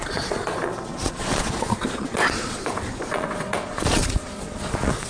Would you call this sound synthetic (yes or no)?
yes